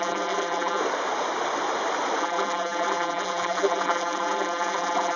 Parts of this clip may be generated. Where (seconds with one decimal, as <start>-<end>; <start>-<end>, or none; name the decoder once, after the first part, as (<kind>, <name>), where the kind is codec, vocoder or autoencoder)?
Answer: 0.0-0.8 (vocoder, BigVGAN v2); 2.2-5.2